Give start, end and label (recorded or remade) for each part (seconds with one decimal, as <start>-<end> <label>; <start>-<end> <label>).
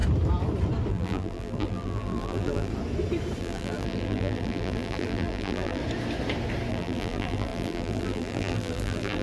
0.0-0.9 recorded; 0.9-2.7 remade; 2.7-3.4 recorded; 3.4-5.8 remade; 5.8-6.7 recorded; 6.7-9.2 remade